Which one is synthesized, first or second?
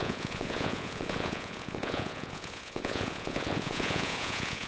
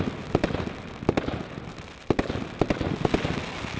first